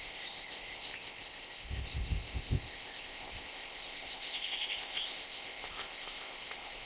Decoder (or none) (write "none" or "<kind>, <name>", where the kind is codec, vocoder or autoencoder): codec, ZipCodec